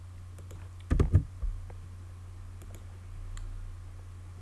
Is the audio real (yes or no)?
yes